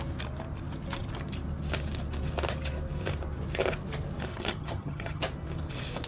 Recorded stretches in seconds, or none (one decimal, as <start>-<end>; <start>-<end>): 0.0-4.3; 5.2-6.1